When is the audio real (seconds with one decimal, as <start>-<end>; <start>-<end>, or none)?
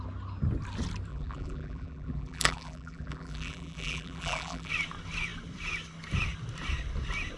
0.0-1.1; 4.7-7.4